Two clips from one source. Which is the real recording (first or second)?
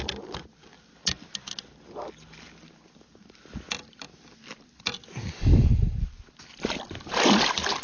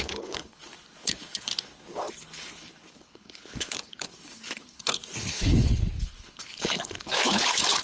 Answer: first